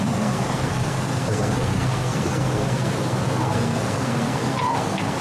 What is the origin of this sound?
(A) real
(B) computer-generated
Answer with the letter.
B